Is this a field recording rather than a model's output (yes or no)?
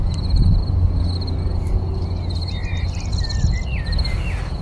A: yes